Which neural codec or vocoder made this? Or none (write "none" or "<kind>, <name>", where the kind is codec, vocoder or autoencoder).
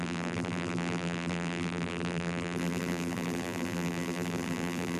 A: vocoder, BigVGAN v2